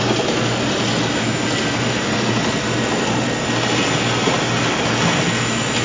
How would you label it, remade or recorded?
recorded